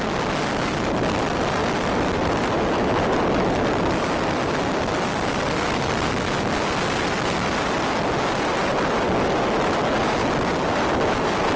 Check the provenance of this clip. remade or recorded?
recorded